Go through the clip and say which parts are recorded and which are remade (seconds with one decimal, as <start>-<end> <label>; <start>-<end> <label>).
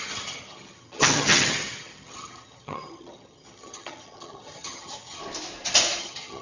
0.0-5.2 remade; 5.2-6.0 recorded; 6.0-6.4 remade